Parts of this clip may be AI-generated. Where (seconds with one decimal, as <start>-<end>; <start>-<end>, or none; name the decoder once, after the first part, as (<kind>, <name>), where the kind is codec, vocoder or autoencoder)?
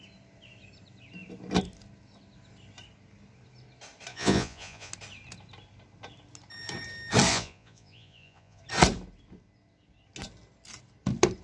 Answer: 4.1-4.9 (vocoder, Vocos); 7.3-8.6